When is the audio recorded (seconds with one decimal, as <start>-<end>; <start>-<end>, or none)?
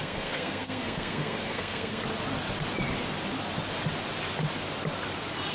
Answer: 2.0-5.5